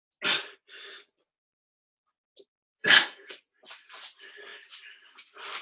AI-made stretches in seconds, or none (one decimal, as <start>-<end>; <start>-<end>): 2.8-3.3